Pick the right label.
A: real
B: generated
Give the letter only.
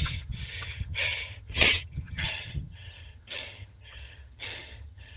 B